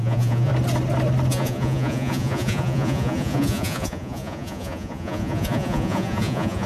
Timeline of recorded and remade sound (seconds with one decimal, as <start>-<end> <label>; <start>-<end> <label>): 0.0-0.5 remade; 0.5-1.3 recorded; 1.3-6.7 remade